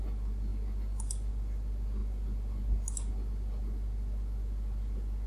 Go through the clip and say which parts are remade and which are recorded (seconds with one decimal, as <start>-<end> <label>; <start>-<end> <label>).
0.0-5.3 recorded